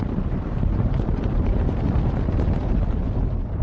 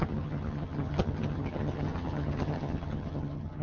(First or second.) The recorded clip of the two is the first